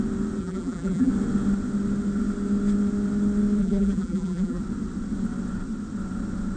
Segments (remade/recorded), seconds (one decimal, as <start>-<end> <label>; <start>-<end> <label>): 0.0-0.4 recorded; 0.4-1.1 remade; 1.1-3.6 recorded; 3.6-4.6 remade; 4.6-6.6 recorded